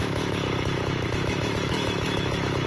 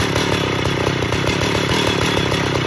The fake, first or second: first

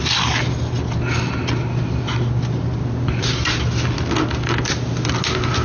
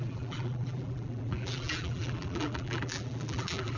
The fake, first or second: second